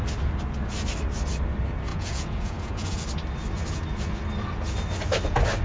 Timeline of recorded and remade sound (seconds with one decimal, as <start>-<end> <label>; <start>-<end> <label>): 0.0-1.9 recorded; 1.9-3.0 remade; 3.0-5.6 recorded